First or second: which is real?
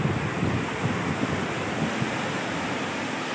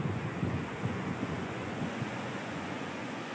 first